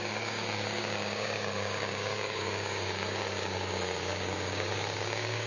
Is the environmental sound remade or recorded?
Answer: remade